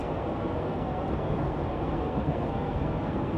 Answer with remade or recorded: remade